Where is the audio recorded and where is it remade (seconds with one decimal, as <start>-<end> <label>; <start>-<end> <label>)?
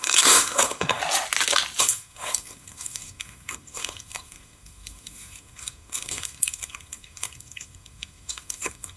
0.0-1.0 remade; 1.0-1.8 recorded; 1.8-9.0 remade